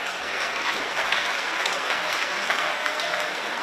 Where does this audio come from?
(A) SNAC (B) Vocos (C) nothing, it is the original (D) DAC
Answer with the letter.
A